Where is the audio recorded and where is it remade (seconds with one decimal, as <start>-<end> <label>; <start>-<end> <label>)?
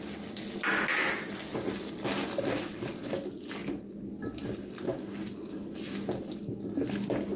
0.0-7.4 recorded